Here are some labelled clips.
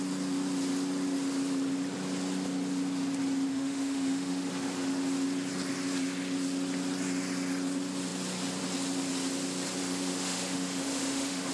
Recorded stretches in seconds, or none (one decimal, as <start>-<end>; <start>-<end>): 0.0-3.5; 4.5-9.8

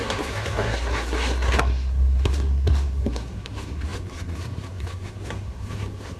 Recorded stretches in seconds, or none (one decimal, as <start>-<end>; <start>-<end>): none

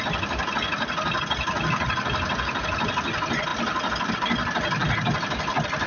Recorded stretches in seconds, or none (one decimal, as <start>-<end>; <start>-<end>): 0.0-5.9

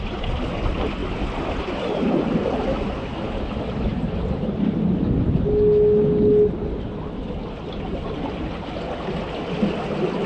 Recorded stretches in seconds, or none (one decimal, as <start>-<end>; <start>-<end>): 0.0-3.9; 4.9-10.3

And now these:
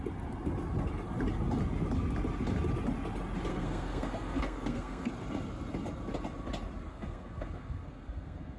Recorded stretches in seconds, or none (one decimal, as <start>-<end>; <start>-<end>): 0.0-3.5; 5.1-6.9

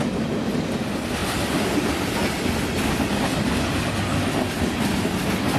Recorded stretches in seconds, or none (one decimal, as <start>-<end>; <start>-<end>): 0.0-5.6